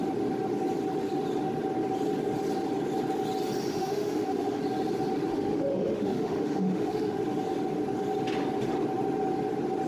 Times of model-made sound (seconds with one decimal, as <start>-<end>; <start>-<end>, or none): 3.7-4.6; 5.3-7.2